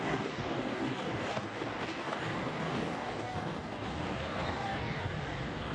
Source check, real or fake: fake